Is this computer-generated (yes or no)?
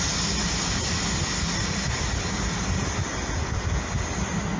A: no